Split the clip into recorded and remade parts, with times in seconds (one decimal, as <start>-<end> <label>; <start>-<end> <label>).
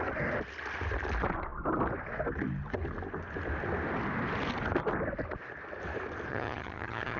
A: 0.0-6.3 recorded; 6.3-7.2 remade